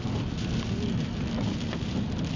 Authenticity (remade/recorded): recorded